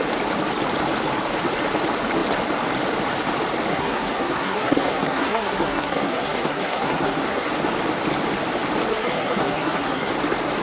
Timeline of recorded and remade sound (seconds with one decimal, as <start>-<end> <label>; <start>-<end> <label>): 0.0-3.7 recorded; 3.7-7.5 remade; 7.5-8.9 recorded; 8.9-10.1 remade; 10.1-10.6 recorded